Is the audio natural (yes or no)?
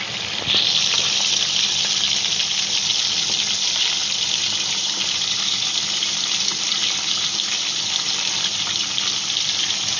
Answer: yes